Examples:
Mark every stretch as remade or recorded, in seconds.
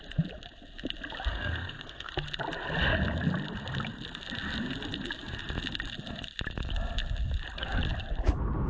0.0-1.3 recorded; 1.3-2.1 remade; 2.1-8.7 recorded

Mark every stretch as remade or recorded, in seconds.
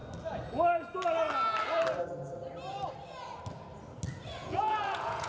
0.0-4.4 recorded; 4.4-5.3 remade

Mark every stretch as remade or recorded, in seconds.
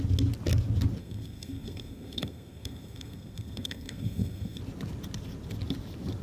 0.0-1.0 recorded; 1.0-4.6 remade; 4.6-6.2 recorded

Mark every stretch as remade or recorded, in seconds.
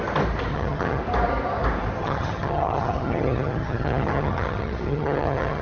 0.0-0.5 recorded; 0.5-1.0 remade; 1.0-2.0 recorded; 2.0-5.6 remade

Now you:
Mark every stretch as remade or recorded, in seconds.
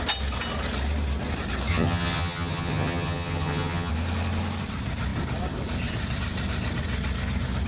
0.0-1.7 recorded; 1.7-3.9 remade; 3.9-7.7 recorded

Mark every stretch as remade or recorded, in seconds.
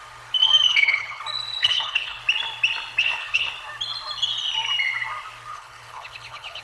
0.0-0.7 recorded; 0.7-1.2 remade; 1.2-1.6 recorded; 1.6-2.2 remade; 2.2-3.0 recorded; 3.0-3.5 remade; 3.5-5.5 recorded; 5.5-6.6 remade